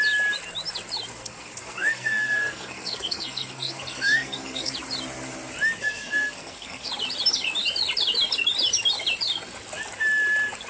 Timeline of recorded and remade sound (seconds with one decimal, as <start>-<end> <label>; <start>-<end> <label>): 0.0-1.1 recorded; 1.1-4.7 remade; 4.7-5.8 recorded; 5.8-6.9 remade; 6.9-10.7 recorded